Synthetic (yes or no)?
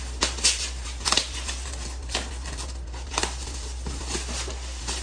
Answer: no